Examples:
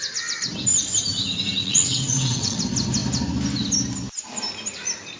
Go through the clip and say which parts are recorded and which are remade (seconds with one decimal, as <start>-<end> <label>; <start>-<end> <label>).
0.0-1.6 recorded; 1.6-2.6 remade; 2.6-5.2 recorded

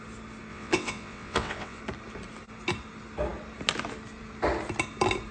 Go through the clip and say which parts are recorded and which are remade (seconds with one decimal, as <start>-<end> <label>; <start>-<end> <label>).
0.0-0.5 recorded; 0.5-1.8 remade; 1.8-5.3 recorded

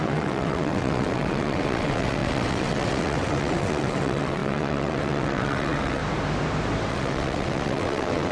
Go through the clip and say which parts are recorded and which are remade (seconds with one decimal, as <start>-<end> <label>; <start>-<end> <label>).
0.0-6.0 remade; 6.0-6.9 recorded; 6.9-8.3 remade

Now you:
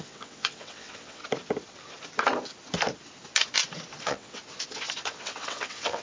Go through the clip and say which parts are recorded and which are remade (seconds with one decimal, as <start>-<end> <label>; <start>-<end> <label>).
0.0-1.2 remade; 1.2-4.0 recorded; 4.0-4.4 remade; 4.4-5.1 recorded; 5.1-6.0 remade

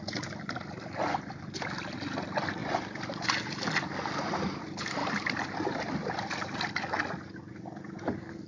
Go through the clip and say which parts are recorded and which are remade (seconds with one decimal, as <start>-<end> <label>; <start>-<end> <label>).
0.0-8.5 recorded

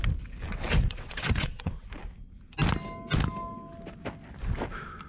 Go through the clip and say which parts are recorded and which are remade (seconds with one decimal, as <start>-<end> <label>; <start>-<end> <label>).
0.0-0.5 recorded; 0.5-1.9 remade; 1.9-5.1 recorded